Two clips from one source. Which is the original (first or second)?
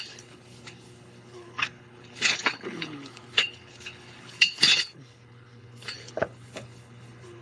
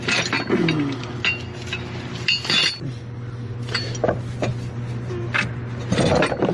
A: second